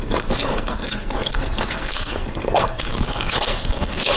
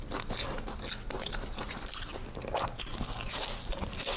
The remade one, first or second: first